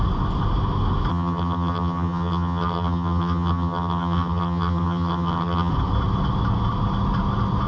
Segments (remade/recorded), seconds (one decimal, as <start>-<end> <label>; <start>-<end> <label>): 0.0-1.1 recorded; 1.1-5.7 remade; 5.7-7.7 recorded